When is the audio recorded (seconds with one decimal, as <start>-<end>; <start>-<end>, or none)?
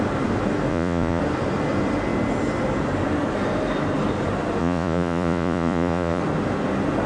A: 0.0-0.7; 1.2-4.6; 6.2-7.1